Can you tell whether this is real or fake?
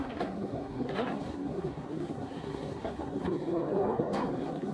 fake